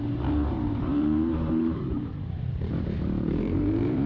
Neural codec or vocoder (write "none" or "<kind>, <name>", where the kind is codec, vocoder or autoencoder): vocoder, BigVGAN v2